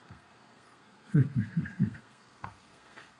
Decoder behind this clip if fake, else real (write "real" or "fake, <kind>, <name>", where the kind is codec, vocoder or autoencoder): fake, codec, SNAC